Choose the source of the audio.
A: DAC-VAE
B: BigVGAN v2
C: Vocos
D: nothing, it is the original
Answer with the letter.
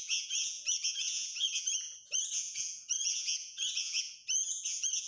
C